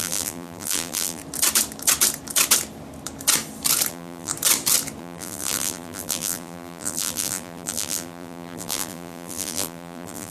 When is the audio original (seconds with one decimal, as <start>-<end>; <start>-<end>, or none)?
1.2-3.9; 4.3-5.0